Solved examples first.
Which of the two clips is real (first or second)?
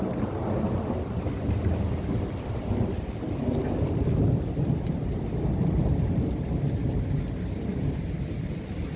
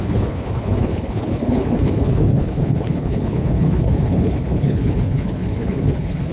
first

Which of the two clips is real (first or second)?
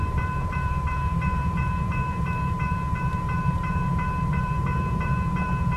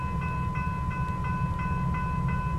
second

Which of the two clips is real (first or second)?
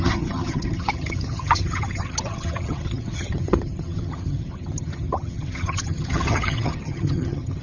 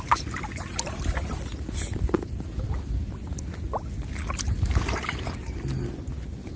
second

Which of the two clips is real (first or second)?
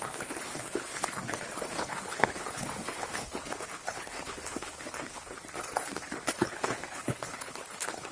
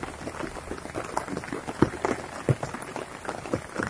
second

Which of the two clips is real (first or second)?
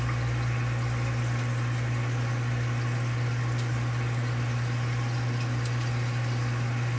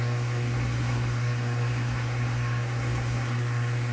first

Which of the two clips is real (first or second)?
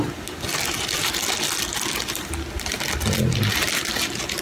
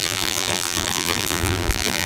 first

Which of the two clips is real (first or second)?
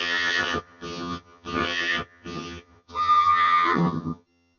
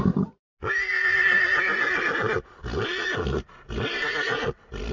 second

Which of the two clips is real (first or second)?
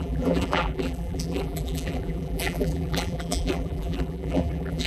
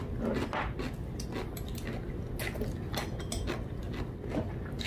second